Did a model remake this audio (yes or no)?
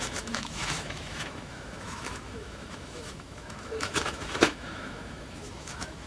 yes